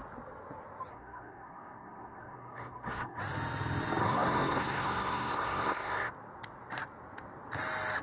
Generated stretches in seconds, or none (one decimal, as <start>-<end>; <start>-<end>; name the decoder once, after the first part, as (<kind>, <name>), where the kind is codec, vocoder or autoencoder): 0.9-3.2 (codec, SNAC); 4.0-6.1